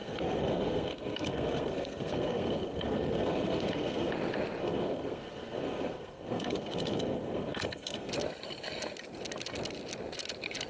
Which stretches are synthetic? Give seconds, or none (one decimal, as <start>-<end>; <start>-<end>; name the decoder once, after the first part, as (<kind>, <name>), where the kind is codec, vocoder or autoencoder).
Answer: 0.0-4.1 (codec, SNAC); 4.6-8.1